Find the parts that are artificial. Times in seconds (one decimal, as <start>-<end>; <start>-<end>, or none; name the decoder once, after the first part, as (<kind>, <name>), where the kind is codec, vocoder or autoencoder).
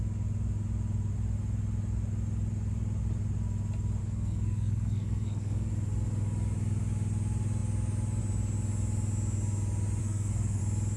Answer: 4.0-5.7 (codec, SNAC); 10.0-10.6